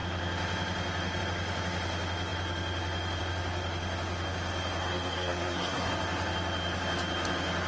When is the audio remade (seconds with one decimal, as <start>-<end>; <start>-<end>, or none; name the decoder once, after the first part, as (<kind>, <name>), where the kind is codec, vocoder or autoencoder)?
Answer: 4.8-5.9 (codec, SNAC)